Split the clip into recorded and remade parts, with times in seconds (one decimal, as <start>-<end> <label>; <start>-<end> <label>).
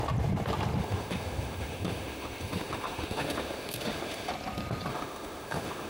0.0-0.8 recorded; 0.8-4.3 remade; 4.3-4.9 recorded; 4.9-5.9 remade